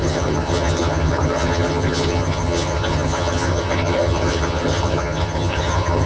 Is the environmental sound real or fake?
fake